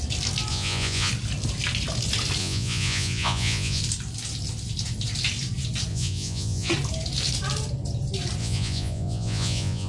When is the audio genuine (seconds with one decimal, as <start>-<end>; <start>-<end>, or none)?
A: 0.0-0.5; 1.1-2.4; 3.8-5.9; 6.7-8.4